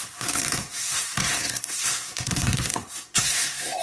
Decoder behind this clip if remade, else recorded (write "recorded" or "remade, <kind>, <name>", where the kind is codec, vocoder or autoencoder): remade, codec, SNAC